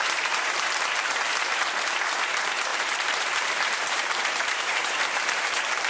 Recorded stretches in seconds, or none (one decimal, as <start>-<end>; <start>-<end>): 0.0-2.7; 5.0-5.9